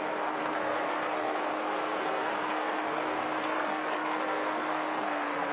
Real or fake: fake